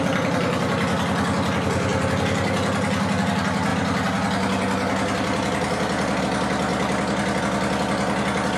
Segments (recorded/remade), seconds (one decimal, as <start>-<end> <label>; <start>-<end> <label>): 0.0-8.6 recorded